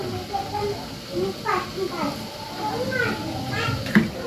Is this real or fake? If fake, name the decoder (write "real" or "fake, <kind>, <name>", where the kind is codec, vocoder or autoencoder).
real